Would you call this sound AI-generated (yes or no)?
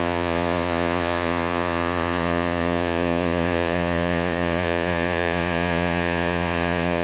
yes